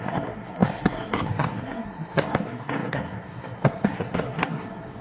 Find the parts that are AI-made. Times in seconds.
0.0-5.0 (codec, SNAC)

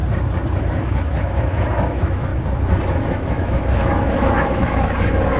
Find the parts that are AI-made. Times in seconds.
0.6-2.3 (autoencoder, DAC-VAE); 2.9-5.4

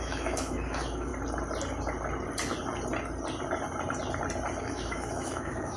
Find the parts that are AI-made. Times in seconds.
0.0-1.1 (autoencoder, DAC-VAE); 4.6-5.8

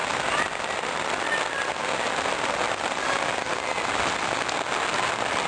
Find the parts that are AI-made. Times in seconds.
0.7-1.8 (vocoder, BigVGAN v2); 5.1-5.5

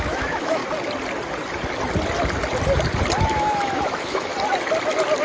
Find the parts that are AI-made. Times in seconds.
0.0-0.6 (autoencoder, DAC-VAE); 3.2-4.3

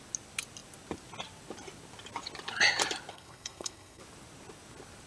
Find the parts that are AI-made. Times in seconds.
3.1-4.0 (codec, SNAC)

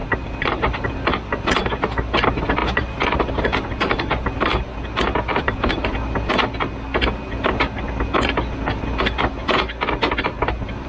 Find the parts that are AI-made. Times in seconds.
0.0-0.9 (vocoder, BigVGAN v2); 2.6-4.6; 5.3-5.9